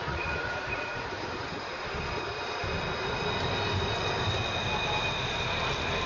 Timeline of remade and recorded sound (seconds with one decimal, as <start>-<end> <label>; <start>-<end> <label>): 0.0-1.0 remade; 1.0-6.1 recorded

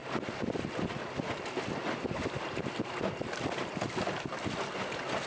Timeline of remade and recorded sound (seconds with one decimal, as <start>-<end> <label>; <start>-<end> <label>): 0.0-5.3 recorded